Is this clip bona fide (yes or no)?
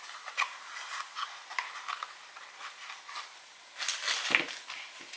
yes